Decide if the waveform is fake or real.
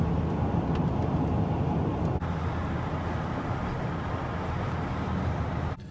real